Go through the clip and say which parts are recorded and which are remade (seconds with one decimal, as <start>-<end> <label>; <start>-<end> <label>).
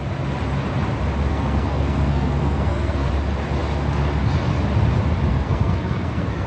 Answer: 0.0-1.3 recorded; 1.3-3.1 remade; 3.1-5.3 recorded; 5.3-6.5 remade